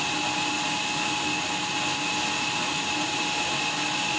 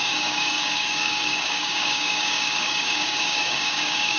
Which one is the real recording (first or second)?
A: first